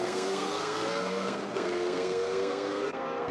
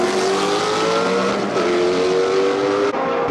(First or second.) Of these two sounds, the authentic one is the second